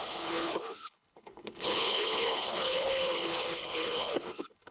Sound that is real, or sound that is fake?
fake